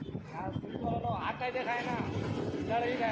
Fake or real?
real